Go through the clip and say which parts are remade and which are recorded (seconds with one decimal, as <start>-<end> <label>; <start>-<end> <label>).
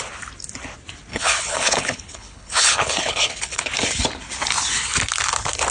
0.0-1.1 recorded; 1.1-3.6 remade; 3.6-5.7 recorded